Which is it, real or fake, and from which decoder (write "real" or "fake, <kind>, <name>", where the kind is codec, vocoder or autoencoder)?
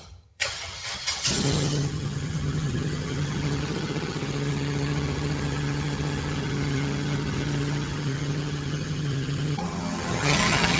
fake, vocoder, HiFi-GAN